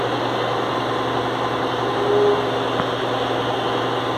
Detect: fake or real fake